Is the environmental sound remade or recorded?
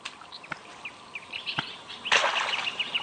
recorded